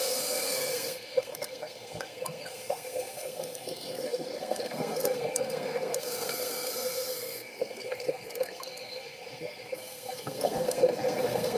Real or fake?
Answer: fake